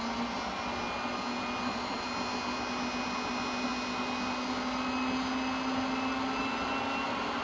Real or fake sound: real